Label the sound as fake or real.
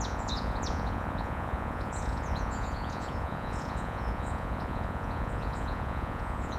fake